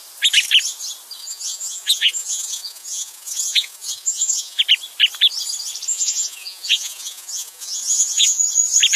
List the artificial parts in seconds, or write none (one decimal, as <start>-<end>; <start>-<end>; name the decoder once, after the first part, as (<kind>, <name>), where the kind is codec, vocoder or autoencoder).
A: 1.2-4.6 (vocoder, Vocos); 5.9-8.4